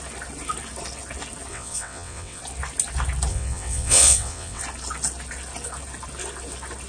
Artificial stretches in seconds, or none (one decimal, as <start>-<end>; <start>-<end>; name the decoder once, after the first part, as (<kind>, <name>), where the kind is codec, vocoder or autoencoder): 1.5-2.4 (vocoder, WaveNeXt); 3.3-4.6